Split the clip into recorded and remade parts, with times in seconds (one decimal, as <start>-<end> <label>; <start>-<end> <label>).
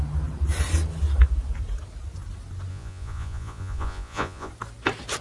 0.0-2.7 recorded; 2.7-4.5 remade; 4.5-5.2 recorded